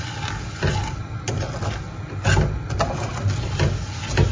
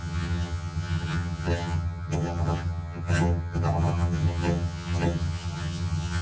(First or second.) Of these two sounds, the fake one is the second